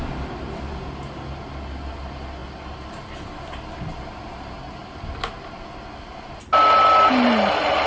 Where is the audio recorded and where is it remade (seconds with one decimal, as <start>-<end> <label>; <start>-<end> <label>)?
0.0-7.9 recorded